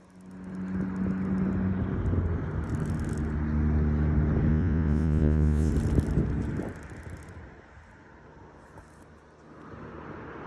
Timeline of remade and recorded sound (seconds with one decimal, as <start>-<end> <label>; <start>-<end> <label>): 0.0-4.5 recorded; 4.5-5.7 remade; 5.7-10.5 recorded